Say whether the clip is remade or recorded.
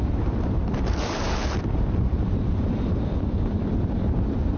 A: remade